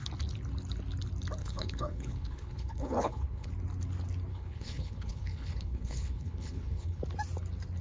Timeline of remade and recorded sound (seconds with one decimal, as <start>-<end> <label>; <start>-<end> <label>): 0.0-1.4 recorded; 1.4-3.5 remade; 3.5-4.3 recorded; 4.3-7.0 remade; 7.0-7.8 recorded